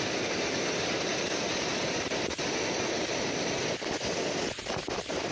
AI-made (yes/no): no